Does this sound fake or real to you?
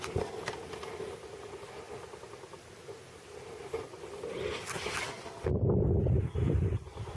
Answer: real